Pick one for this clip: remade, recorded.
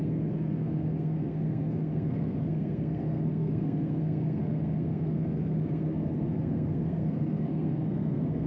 remade